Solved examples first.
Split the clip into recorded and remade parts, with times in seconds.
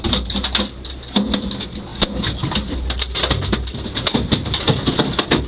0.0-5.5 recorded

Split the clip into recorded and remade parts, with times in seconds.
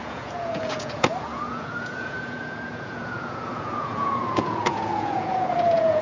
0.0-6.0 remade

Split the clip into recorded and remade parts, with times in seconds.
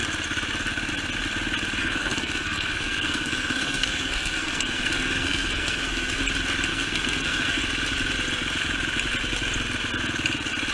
0.0-1.8 recorded; 1.8-6.2 remade; 6.2-6.7 recorded; 6.7-7.6 remade; 7.6-10.7 recorded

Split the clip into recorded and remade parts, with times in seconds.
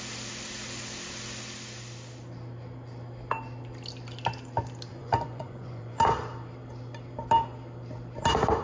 0.0-4.9 recorded; 4.9-6.0 remade; 6.0-8.6 recorded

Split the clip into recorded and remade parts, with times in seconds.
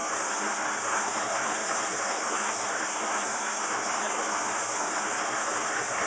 0.0-6.1 remade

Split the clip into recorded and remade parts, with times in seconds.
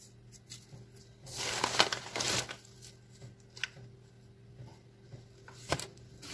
0.0-6.3 recorded